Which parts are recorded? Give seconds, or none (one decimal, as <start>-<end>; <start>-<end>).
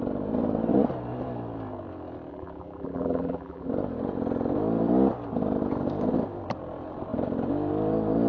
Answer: 0.0-2.3; 3.7-8.3